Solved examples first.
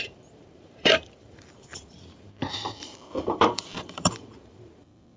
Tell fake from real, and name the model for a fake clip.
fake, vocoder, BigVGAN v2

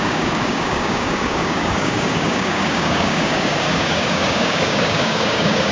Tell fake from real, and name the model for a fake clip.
fake, codec, DAC